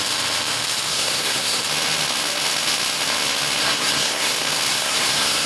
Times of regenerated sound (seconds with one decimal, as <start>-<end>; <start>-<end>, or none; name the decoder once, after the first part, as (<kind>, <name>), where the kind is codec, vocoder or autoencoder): 0.9-1.6 (codec, SNAC); 3.6-4.3; 4.7-5.5